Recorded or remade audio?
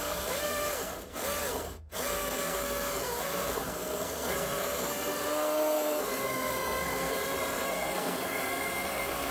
remade